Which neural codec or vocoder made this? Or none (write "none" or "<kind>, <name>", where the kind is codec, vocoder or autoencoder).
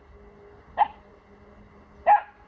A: none